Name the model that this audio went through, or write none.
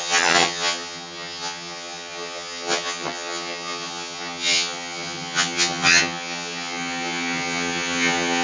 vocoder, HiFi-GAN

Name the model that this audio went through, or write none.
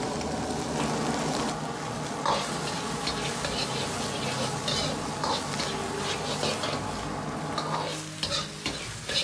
none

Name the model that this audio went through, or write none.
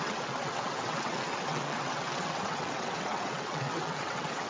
vocoder, WaveNeXt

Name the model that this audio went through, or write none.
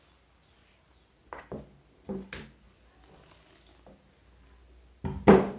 none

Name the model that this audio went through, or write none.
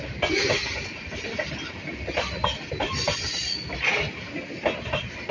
none